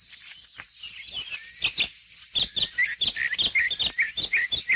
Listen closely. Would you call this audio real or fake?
real